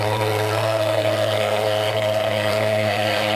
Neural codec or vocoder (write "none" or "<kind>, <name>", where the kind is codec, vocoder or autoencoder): codec, SNAC